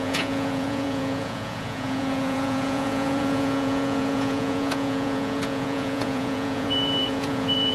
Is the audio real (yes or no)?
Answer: no